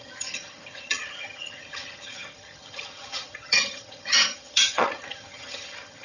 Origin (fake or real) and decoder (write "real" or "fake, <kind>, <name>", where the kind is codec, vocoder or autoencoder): fake, vocoder, HiFi-GAN